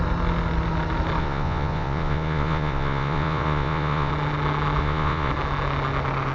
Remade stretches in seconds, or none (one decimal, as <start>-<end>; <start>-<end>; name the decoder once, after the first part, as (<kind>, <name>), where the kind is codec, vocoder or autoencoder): 1.2-4.1 (vocoder, Vocos); 4.8-5.3